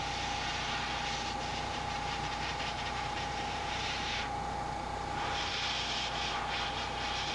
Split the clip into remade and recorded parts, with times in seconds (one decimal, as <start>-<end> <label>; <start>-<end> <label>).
0.0-1.5 recorded; 1.5-5.5 remade; 5.5-7.3 recorded